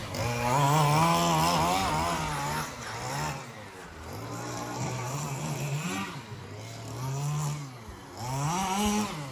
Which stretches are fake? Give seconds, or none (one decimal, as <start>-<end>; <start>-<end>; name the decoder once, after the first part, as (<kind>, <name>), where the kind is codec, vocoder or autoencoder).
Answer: 3.8-6.2 (vocoder, BigVGAN v2)